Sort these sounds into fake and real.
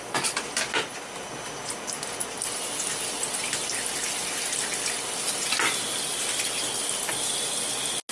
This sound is real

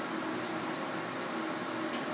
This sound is real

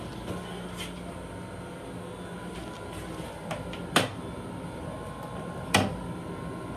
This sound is real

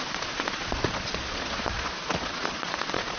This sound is fake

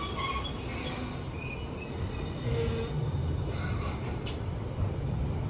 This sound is real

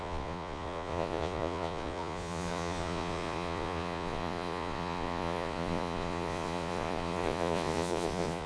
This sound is fake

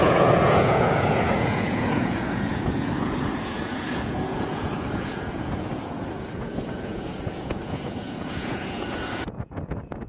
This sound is fake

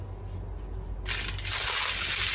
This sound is real